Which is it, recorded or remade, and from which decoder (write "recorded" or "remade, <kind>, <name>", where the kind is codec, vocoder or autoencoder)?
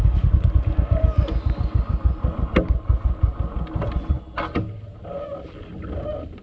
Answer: recorded